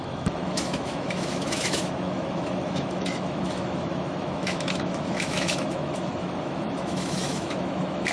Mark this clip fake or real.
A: fake